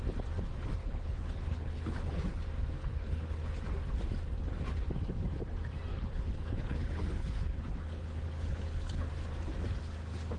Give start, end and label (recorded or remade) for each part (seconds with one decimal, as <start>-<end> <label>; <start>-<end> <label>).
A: 0.0-0.8 recorded; 0.8-2.4 remade; 2.4-2.8 recorded; 2.8-3.4 remade; 3.4-5.9 recorded; 5.9-9.1 remade; 9.1-10.4 recorded